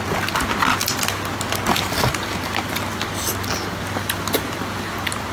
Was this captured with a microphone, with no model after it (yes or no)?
yes